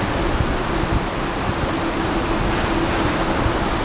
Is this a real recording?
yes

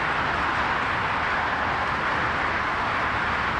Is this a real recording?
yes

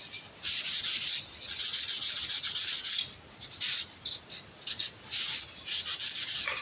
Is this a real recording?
yes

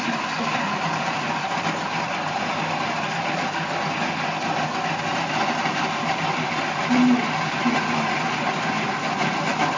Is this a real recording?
yes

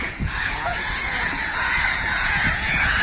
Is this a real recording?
no